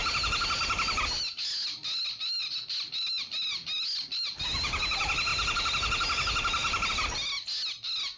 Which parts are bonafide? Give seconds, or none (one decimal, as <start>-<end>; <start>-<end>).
0.0-8.2